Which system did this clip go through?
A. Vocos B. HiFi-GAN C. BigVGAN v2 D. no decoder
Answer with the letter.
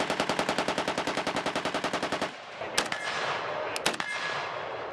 D